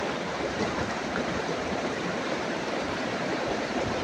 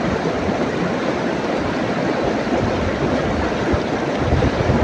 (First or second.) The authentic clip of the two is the second